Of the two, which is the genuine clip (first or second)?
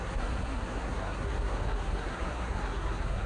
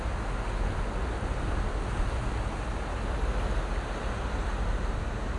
second